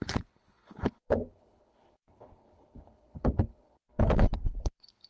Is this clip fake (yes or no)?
yes